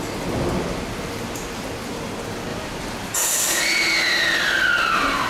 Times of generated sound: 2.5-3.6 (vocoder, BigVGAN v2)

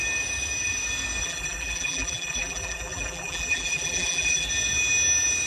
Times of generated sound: 1.2-4.5 (vocoder, BigVGAN v2)

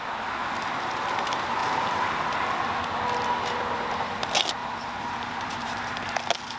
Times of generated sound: 1.6-2.1 (vocoder, BigVGAN v2); 4.6-5.8

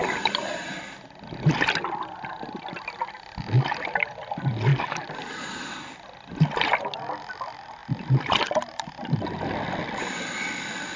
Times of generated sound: 4.7-5.4 (vocoder, BigVGAN v2)

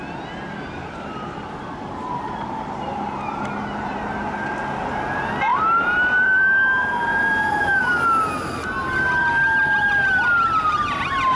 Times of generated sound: 0.8-4.0 (vocoder, BigVGAN v2); 5.5-7.8

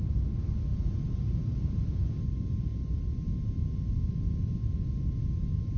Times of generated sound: 0.7-1.9 (vocoder, BigVGAN v2)